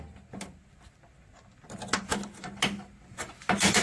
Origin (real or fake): real